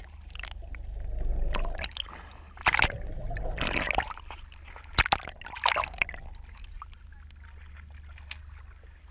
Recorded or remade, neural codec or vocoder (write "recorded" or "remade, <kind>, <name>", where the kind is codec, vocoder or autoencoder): recorded